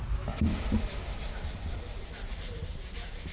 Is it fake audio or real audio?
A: real